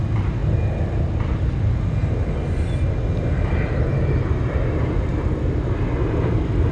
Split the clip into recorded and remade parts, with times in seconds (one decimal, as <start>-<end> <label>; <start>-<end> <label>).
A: 0.0-6.7 recorded